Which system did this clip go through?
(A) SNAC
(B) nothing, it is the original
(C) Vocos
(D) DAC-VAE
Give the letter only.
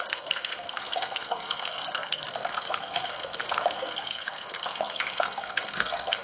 A